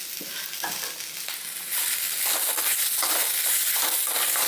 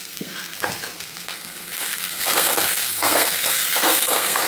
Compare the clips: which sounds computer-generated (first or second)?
second